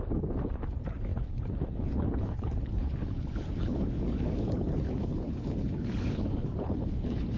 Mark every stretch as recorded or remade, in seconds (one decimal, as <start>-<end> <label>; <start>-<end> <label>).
0.0-7.4 remade